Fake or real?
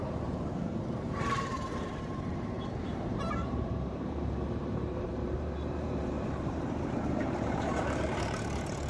fake